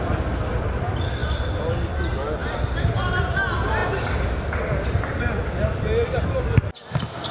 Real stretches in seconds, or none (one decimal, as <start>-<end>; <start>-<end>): 0.0-7.3